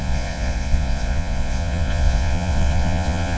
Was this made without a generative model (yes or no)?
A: no